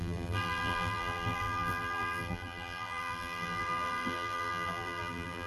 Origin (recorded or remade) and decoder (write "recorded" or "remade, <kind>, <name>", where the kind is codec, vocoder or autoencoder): remade, vocoder, BigVGAN v2